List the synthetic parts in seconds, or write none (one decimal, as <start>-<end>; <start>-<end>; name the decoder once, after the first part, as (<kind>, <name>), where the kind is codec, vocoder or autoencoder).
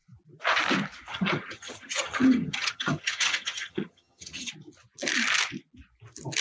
1.1-4.5 (vocoder, HiFi-GAN)